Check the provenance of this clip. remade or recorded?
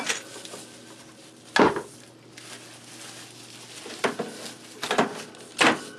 recorded